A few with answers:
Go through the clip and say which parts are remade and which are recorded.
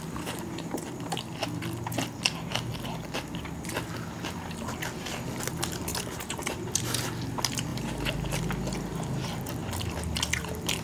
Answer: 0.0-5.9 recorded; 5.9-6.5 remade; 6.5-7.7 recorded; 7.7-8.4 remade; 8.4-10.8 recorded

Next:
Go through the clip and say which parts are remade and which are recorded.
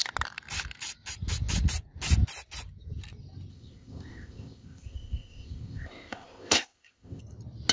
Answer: 0.0-3.5 recorded; 3.5-7.2 remade; 7.2-7.7 recorded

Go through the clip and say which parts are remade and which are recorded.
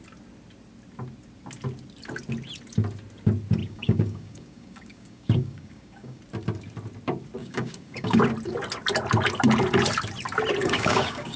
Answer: 0.0-3.6 recorded; 3.6-6.2 remade; 6.2-7.4 recorded; 7.4-8.2 remade; 8.2-10.6 recorded; 10.6-11.4 remade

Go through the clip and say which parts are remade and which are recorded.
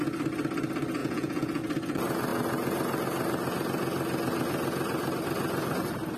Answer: 0.0-1.0 recorded; 1.0-1.6 remade; 1.6-6.2 recorded